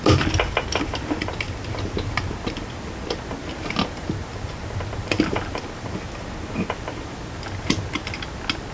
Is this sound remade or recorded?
recorded